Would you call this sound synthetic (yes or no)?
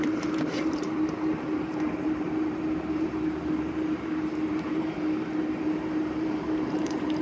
yes